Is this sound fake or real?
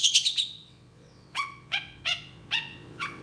fake